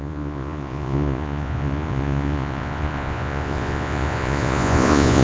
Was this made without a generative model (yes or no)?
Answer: no